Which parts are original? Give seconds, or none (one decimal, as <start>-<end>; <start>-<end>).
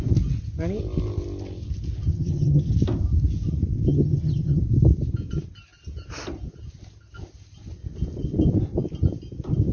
0.0-2.1; 2.7-3.9; 4.6-9.7